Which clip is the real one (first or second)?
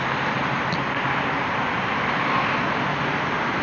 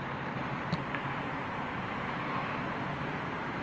first